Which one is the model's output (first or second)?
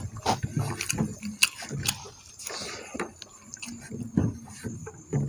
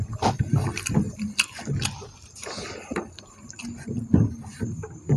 second